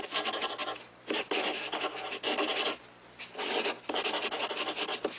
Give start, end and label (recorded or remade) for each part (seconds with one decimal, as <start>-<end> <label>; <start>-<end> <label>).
0.0-5.2 recorded